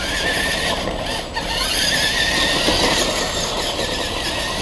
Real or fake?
real